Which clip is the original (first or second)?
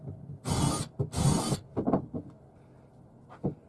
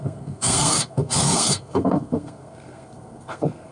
first